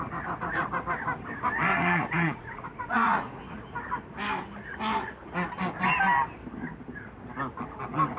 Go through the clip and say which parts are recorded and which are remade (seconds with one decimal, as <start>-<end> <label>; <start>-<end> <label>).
0.0-1.7 recorded; 1.7-3.4 remade; 3.4-8.2 recorded